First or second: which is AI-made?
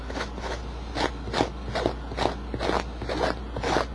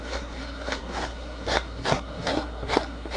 second